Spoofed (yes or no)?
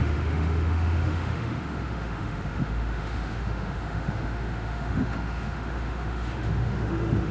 yes